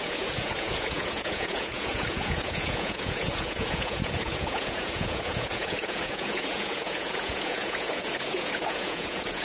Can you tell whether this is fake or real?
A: fake